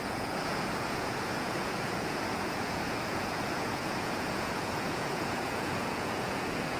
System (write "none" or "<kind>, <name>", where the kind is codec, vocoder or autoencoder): vocoder, Vocos